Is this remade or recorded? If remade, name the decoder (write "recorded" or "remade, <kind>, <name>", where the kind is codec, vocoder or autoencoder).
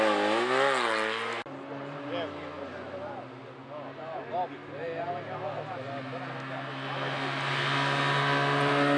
recorded